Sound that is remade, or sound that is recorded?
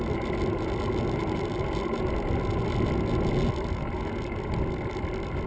recorded